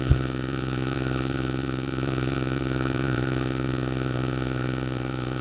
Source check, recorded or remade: remade